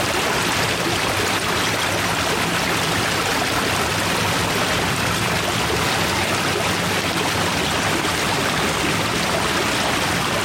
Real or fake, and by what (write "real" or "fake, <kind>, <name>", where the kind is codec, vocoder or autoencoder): real